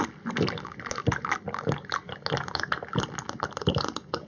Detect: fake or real real